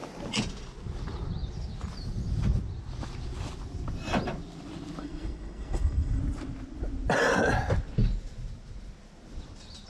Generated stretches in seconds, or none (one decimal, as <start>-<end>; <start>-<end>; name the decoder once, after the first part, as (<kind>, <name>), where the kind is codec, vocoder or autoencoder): 5.0-6.2 (codec, SNAC)